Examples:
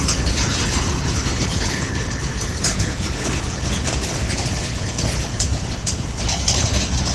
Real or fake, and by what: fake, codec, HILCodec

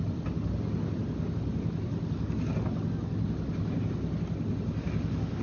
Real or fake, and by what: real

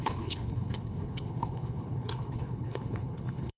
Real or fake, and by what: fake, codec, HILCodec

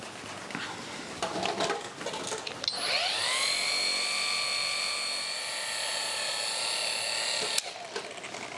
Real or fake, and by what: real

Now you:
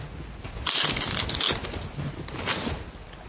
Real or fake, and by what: real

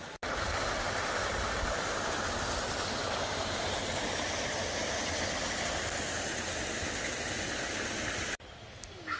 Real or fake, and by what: real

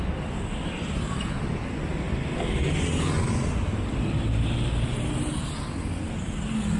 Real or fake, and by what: real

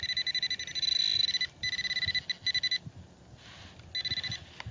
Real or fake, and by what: real